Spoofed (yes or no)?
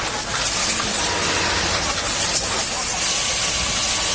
no